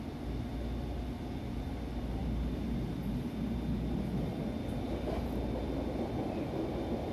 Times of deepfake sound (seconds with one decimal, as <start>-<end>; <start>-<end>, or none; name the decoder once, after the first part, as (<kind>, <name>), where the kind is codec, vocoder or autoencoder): none